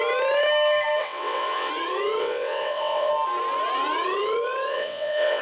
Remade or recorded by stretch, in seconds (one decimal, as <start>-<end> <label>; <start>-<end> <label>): 0.0-1.0 recorded; 1.0-1.7 remade; 1.7-2.2 recorded; 2.2-3.1 remade; 3.1-4.7 recorded; 4.7-5.4 remade